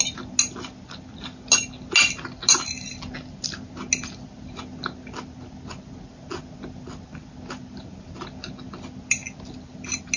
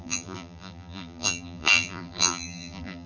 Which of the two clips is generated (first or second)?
second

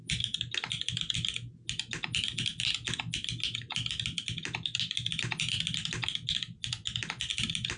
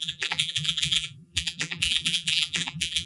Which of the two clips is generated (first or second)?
second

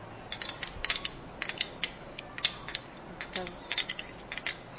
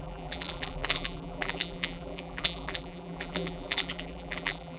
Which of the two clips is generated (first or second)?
second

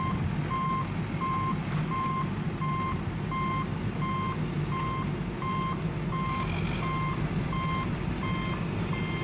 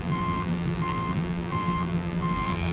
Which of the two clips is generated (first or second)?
second